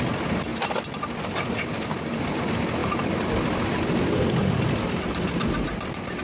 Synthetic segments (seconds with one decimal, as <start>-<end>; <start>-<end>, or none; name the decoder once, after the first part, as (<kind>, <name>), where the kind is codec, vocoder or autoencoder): none